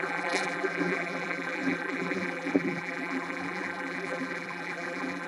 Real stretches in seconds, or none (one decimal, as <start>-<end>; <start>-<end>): none